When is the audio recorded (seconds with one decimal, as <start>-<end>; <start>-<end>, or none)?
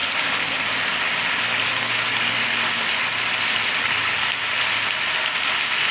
0.0-5.9